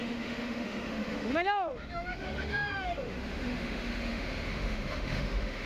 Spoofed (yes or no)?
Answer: yes